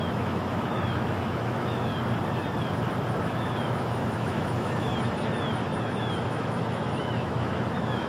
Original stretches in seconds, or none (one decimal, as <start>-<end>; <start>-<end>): 1.9-3.2; 4.9-5.8